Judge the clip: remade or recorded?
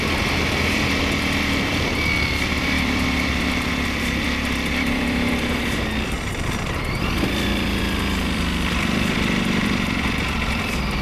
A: remade